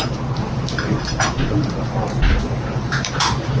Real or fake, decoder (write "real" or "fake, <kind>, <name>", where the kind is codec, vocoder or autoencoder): real